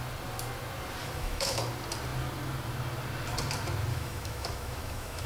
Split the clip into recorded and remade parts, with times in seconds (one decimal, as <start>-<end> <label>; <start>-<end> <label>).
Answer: 0.0-1.0 recorded; 1.0-1.6 remade; 1.6-3.9 recorded; 3.9-5.3 remade